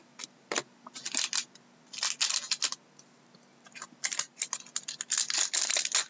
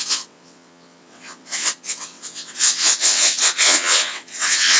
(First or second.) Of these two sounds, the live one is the first